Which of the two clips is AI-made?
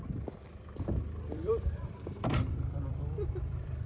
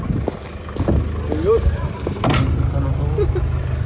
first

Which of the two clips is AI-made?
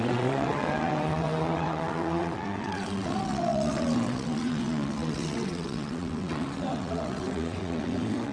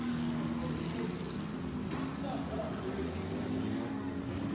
first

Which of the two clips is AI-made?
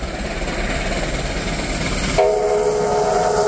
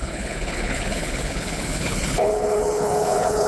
second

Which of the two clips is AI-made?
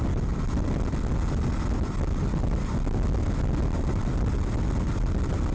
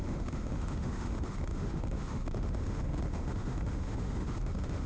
second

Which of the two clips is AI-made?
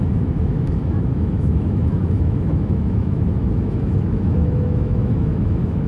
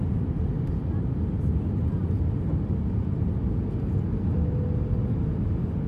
first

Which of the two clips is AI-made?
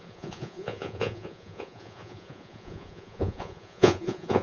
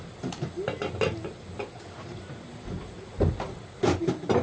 first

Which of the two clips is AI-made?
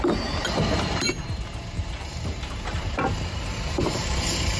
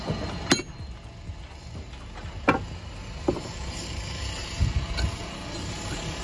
first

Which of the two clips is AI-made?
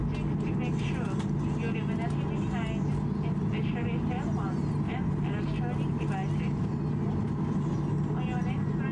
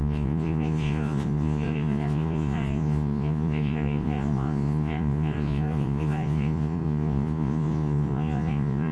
second